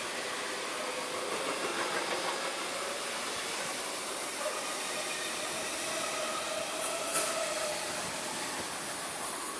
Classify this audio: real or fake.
real